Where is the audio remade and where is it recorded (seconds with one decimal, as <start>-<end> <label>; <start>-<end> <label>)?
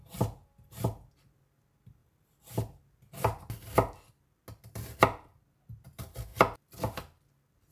0.0-7.7 recorded